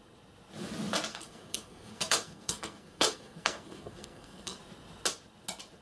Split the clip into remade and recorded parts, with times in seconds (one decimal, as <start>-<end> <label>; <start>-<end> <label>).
0.0-1.1 recorded; 1.1-4.6 remade; 4.6-5.8 recorded